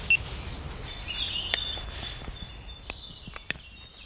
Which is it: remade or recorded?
recorded